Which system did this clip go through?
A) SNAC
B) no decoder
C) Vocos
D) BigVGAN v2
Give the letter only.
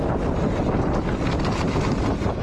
B